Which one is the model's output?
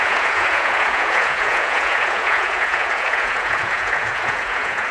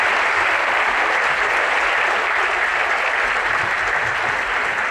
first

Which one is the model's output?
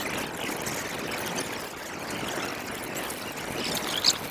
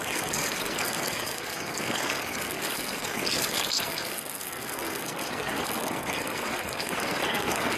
second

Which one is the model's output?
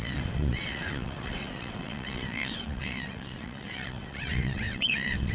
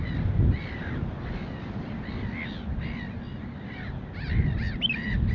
first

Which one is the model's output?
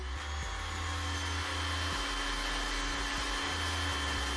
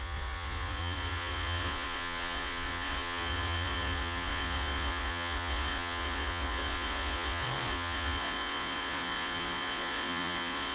second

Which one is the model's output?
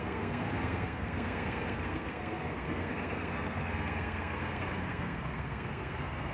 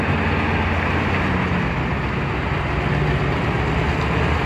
first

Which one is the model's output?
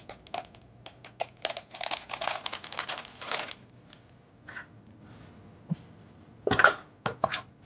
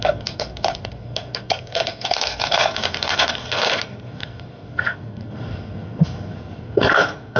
second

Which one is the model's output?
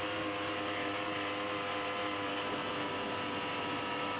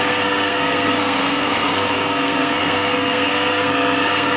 second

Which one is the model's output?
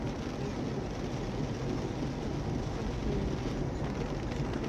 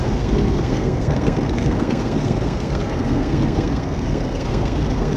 second